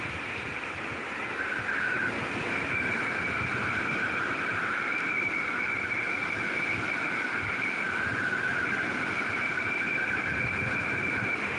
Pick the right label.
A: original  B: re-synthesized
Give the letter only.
A